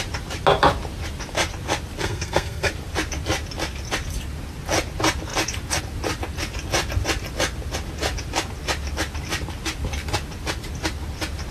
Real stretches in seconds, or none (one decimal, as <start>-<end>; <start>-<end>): 0.0-2.0; 2.7-11.5